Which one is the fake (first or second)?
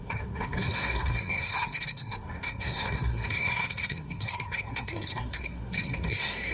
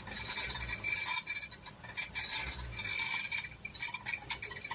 first